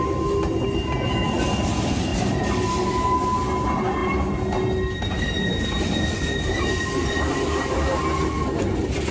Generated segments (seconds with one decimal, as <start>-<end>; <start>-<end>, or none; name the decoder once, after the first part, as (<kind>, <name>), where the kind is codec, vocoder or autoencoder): 2.1-2.6 (vocoder, BigVGAN v2)